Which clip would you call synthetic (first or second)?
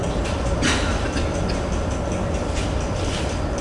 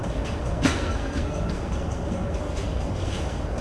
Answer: second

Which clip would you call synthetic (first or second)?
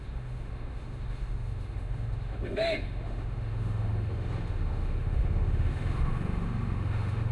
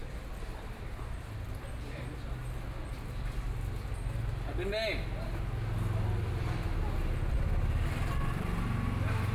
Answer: first